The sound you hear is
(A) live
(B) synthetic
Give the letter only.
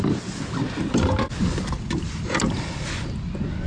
A